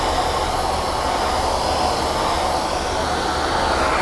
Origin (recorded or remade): recorded